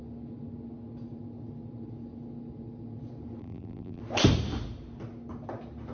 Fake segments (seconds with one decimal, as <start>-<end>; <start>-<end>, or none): 3.4-4.0